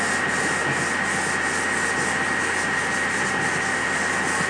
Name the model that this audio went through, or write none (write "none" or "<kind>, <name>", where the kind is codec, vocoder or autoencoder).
none